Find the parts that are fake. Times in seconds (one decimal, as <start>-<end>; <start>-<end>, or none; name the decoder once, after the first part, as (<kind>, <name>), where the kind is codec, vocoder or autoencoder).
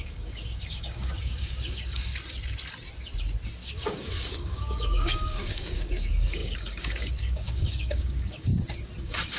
0.0-2.1 (codec, DAC); 3.6-8.5; 9.0-9.4